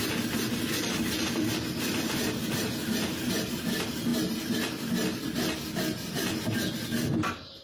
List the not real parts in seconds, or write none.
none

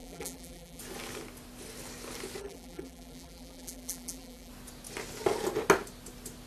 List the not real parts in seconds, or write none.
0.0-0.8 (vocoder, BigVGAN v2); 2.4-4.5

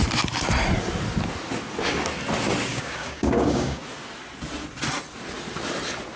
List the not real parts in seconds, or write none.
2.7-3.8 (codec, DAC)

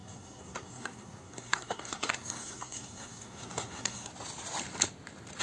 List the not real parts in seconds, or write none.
0.0-4.1 (codec, SNAC)